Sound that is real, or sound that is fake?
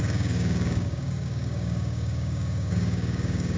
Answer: fake